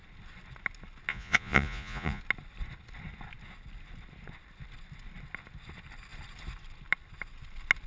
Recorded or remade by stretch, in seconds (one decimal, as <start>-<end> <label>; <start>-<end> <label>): 0.0-1.1 recorded; 1.1-2.2 remade; 2.2-7.9 recorded